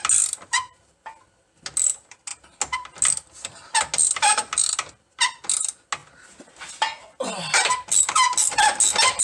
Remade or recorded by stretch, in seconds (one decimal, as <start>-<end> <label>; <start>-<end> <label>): 0.0-9.2 recorded